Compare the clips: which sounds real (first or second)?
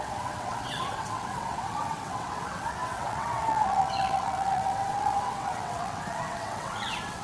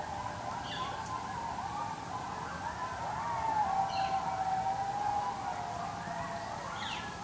second